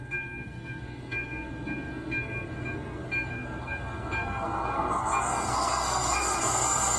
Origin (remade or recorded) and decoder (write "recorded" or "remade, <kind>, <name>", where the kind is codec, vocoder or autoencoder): remade, codec, SNAC